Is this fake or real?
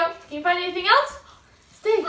fake